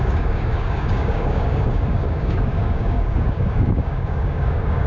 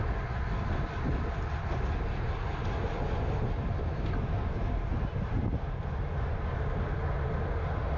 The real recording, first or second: second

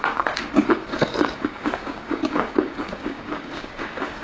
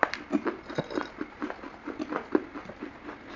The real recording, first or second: second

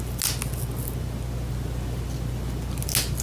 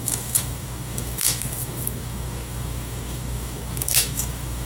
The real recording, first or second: first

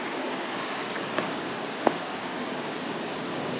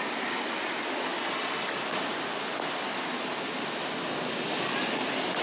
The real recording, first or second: second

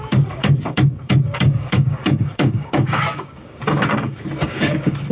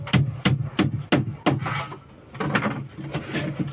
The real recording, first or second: second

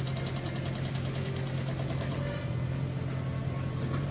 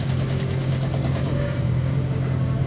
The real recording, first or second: first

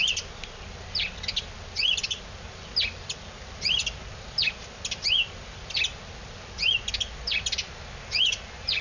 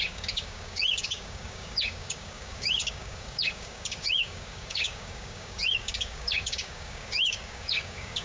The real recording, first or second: first